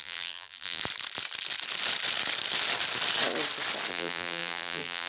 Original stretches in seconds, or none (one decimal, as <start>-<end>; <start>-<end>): 0.8-3.9